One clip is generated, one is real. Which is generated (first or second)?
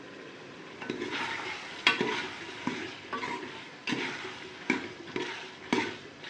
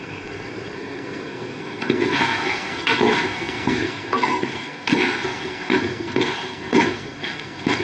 second